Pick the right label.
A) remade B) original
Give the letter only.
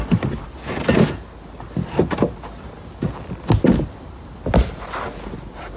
B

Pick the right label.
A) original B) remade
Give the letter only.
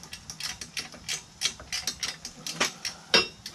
A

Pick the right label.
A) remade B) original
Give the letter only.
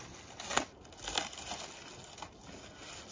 B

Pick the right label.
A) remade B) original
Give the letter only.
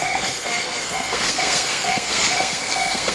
A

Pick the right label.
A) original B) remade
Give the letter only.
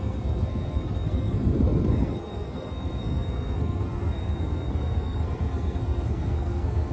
B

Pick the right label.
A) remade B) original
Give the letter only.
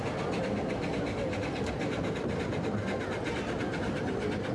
B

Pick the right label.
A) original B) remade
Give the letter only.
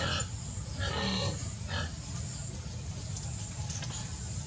A